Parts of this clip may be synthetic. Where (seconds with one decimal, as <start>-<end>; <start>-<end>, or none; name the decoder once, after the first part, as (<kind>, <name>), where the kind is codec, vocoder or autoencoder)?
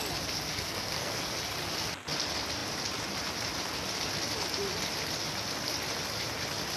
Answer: 0.5-1.3 (codec, SNAC)